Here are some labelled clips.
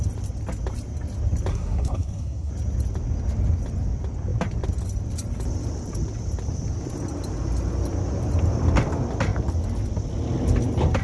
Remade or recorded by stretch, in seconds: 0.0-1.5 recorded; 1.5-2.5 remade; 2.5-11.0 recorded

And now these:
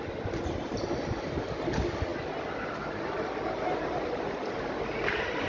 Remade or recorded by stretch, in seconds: 0.0-5.5 recorded

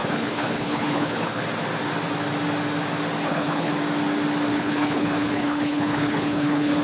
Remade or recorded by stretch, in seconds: 0.0-1.4 remade; 1.4-3.2 recorded; 3.2-3.7 remade; 3.7-4.5 recorded; 4.5-6.8 remade

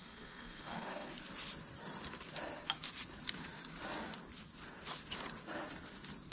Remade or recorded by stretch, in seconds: 0.0-1.1 remade; 1.1-6.3 recorded

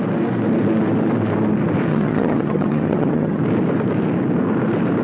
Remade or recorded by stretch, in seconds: 0.0-1.9 recorded; 1.9-3.4 remade; 3.4-5.0 recorded

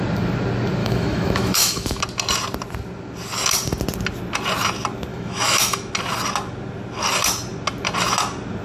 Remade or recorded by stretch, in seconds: 0.0-0.8 recorded; 0.8-2.0 remade; 2.0-5.1 recorded; 5.1-5.9 remade; 5.9-8.6 recorded

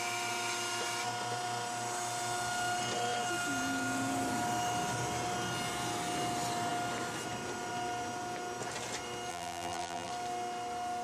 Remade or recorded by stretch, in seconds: 0.0-9.3 recorded; 9.3-10.1 remade; 10.1-11.0 recorded